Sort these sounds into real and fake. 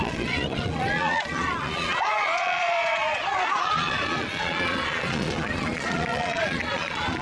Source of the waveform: fake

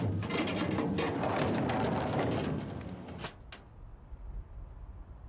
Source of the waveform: real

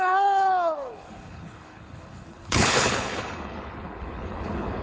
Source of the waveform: fake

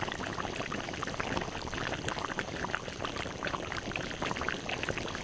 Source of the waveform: fake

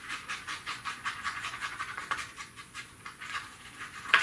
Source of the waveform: fake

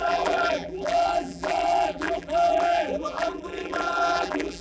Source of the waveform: fake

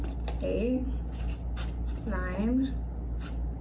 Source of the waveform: real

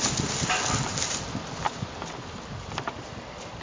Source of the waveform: real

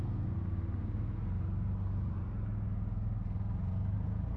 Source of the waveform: real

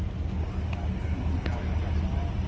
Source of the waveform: real